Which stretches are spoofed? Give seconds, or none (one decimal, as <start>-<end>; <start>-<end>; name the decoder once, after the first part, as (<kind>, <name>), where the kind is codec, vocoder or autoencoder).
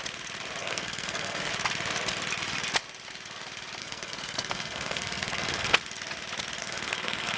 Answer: 0.6-1.5 (codec, SNAC); 3.8-5.8; 6.6-7.4